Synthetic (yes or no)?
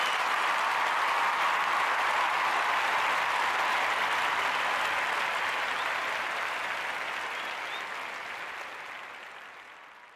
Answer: no